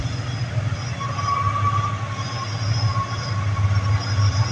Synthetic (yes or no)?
no